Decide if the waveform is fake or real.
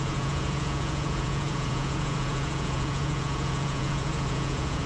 fake